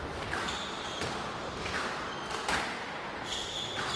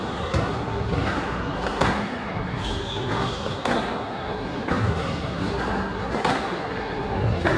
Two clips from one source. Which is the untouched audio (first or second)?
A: first